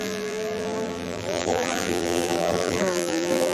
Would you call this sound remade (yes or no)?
yes